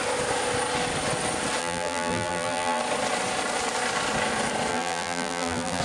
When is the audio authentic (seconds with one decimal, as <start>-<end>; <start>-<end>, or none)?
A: 0.0-1.6; 2.8-4.7